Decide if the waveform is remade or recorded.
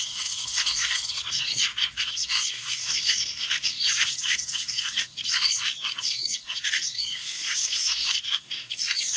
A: remade